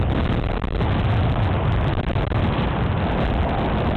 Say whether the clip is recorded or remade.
recorded